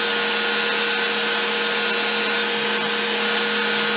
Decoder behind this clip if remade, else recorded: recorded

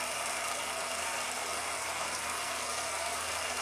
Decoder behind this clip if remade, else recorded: remade, codec, SNAC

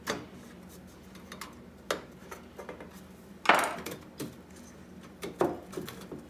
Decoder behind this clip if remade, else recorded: recorded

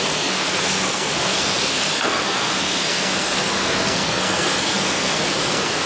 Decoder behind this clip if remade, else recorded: remade, codec, SNAC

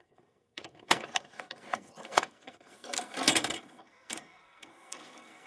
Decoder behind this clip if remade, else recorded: remade, codec, SNAC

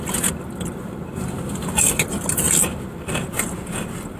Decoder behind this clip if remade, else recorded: recorded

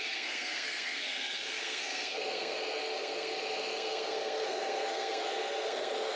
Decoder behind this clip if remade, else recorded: remade, codec, SNAC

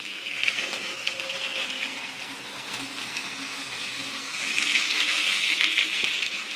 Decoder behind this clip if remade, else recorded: remade, codec, SNAC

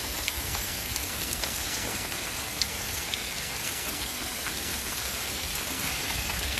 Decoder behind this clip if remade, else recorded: remade, codec, SNAC